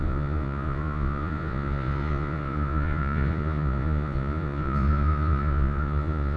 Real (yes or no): no